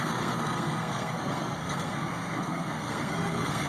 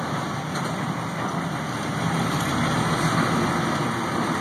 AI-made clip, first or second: first